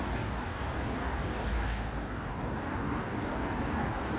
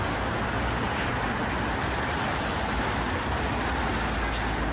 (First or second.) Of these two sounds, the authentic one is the second